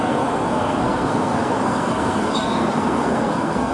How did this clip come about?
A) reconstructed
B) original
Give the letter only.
A